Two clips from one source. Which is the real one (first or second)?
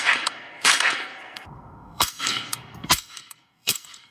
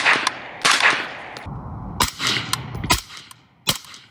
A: second